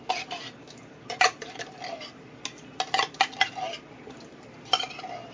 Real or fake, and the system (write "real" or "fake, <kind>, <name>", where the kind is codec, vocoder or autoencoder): real